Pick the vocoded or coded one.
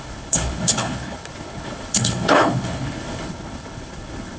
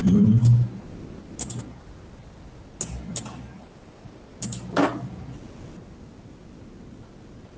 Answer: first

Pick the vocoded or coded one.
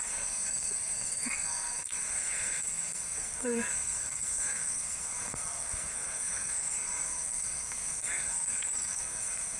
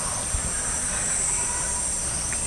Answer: first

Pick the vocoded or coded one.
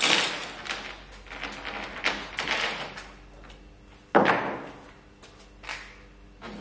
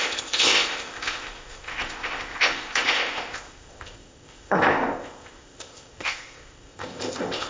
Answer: second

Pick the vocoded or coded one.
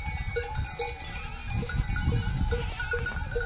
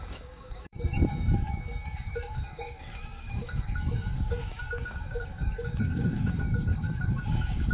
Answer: second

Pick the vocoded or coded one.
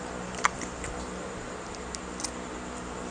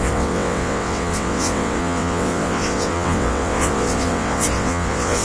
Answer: second